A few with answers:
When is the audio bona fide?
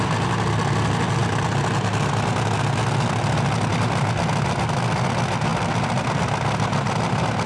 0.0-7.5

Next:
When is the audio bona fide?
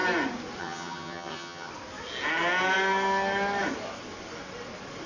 0.0-0.6; 1.7-5.1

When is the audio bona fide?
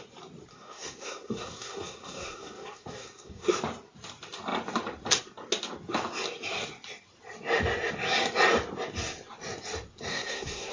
0.0-0.5; 3.5-10.1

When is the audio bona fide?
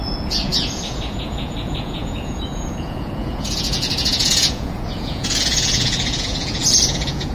none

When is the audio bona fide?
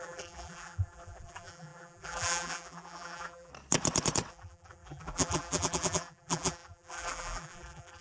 3.5-4.3